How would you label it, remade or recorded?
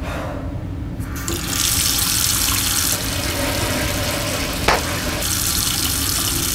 recorded